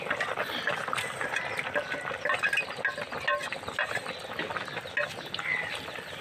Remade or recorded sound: recorded